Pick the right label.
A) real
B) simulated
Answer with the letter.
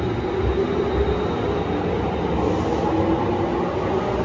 A